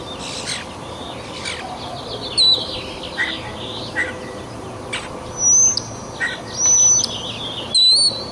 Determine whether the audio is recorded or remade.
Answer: recorded